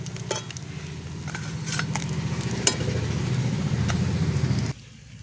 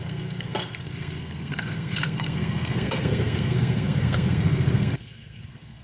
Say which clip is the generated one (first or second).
second